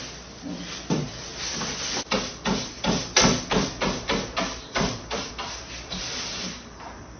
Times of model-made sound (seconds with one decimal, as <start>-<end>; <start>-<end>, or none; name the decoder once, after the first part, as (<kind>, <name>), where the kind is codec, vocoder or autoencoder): 0.0-1.3 (vocoder, BigVGAN v2); 4.7-7.2